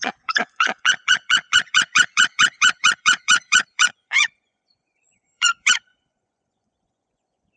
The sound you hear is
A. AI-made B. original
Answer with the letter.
A